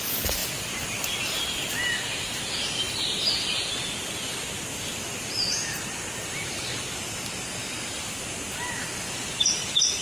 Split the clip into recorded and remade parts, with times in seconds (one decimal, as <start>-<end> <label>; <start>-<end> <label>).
0.0-10.0 recorded